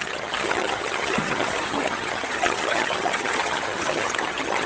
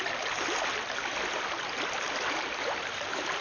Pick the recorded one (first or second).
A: second